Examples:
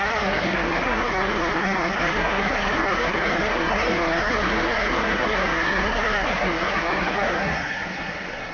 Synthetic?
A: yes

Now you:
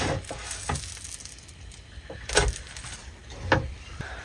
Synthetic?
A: no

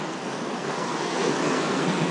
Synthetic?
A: yes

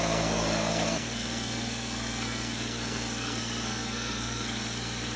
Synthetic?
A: yes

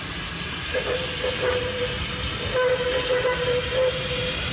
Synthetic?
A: no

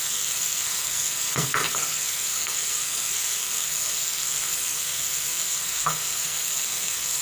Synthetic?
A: yes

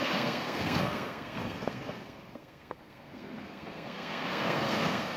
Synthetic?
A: yes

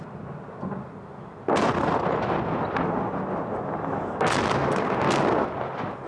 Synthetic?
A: no